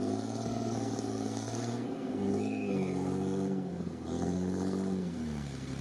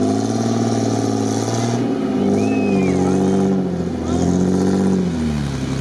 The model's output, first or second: first